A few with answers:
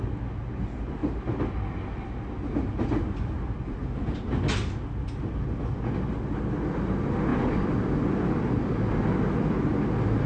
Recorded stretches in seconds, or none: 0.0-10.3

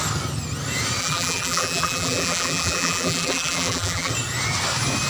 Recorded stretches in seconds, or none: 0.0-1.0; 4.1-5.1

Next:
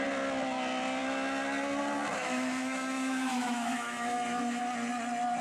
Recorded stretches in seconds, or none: 0.0-2.2; 4.6-5.4

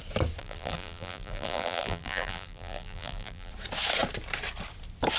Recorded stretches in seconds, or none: 0.0-0.4; 3.5-5.2